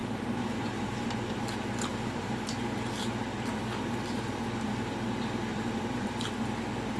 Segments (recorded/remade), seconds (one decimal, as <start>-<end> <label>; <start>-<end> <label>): 0.0-1.4 remade; 1.4-1.9 recorded; 1.9-2.9 remade; 2.9-5.5 recorded; 5.5-6.3 remade; 6.3-7.0 recorded